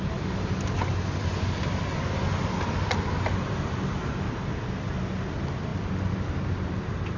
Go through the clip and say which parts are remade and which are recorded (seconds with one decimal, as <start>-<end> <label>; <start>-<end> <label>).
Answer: 0.0-7.2 recorded